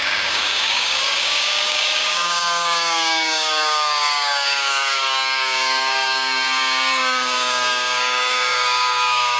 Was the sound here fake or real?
fake